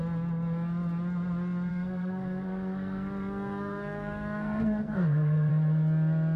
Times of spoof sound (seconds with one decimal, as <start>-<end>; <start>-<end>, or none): 1.7-5.5

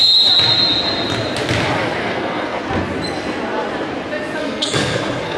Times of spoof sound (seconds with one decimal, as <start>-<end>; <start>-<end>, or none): 2.0-2.6; 4.4-5.4

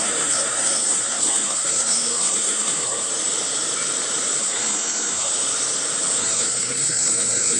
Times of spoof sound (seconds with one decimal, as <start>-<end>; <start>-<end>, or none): 0.0-3.1; 4.4-5.3; 6.2-7.6

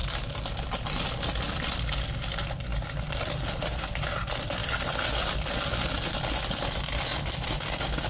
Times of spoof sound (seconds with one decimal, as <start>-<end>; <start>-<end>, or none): none

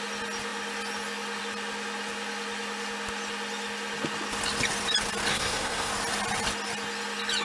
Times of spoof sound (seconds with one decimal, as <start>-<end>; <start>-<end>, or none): 5.3-5.9

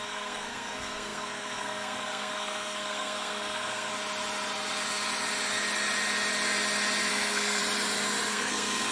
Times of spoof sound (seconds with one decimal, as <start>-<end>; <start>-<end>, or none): 0.0-3.9; 7.1-7.6; 8.3-8.9

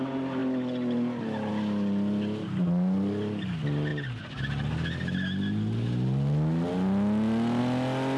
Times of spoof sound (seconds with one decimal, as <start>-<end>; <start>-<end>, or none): none